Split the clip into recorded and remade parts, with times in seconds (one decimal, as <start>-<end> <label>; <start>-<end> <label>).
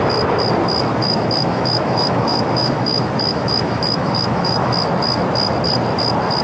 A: 0.0-0.9 recorded; 0.9-4.7 remade; 4.7-6.4 recorded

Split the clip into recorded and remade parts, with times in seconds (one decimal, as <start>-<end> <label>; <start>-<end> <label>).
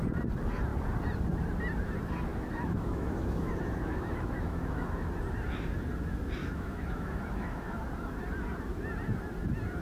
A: 0.0-2.3 recorded; 2.3-5.1 remade; 5.1-6.4 recorded; 6.4-7.8 remade; 7.8-9.8 recorded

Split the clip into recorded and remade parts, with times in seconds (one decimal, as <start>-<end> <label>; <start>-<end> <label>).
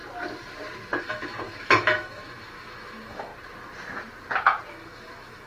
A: 0.0-1.0 recorded; 1.0-3.3 remade; 3.3-4.7 recorded; 4.7-5.5 remade